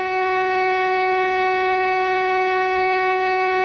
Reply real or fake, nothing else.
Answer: fake